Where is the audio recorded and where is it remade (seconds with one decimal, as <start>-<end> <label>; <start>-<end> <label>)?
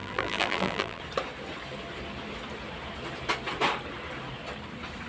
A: 0.0-1.0 remade; 1.0-5.1 recorded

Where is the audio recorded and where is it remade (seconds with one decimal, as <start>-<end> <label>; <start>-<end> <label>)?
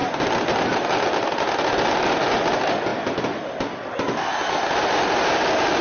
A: 0.0-5.8 recorded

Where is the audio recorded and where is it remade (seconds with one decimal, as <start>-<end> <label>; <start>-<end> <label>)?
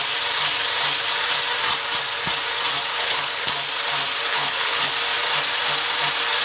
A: 0.0-2.9 recorded; 2.9-3.5 remade; 3.5-4.3 recorded; 4.3-4.9 remade; 4.9-6.4 recorded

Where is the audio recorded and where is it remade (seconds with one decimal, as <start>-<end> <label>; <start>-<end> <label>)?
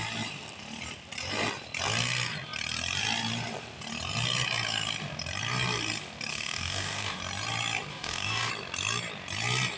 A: 0.0-6.3 recorded; 6.3-7.2 remade; 7.2-7.9 recorded; 7.9-8.5 remade; 8.5-9.8 recorded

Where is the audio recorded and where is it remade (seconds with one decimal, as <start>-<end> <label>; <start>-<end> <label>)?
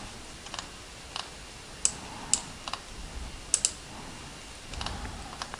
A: 0.0-5.6 recorded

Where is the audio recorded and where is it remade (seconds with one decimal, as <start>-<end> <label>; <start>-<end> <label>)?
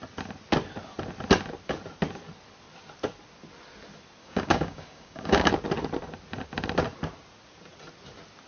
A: 0.0-4.2 recorded; 4.2-5.5 remade; 5.5-8.5 recorded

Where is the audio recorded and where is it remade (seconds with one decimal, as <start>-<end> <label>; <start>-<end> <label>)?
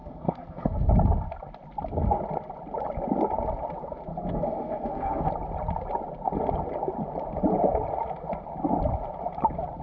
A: 0.0-0.9 remade; 0.9-4.1 recorded; 4.1-5.3 remade; 5.3-9.8 recorded